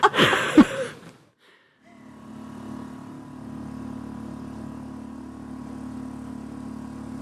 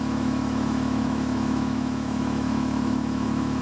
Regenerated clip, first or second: second